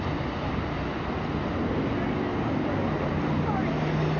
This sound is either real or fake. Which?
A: real